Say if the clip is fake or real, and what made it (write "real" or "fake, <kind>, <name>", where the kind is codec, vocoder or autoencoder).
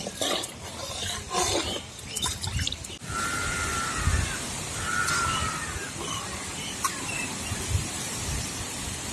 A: fake, vocoder, BigVGAN v2